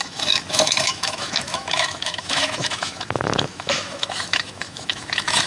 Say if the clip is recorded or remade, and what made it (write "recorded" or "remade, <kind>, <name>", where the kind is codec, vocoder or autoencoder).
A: remade, autoencoder, DAC-VAE